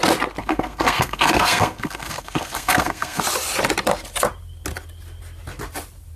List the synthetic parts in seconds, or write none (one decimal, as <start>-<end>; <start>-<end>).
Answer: 0.4-3.2